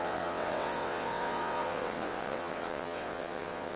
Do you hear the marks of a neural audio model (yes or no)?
yes